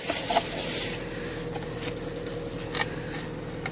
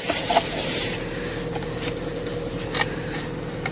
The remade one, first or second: second